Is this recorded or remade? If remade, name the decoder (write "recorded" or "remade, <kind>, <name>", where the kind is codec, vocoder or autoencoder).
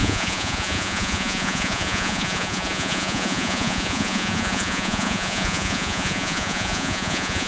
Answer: remade, vocoder, Vocos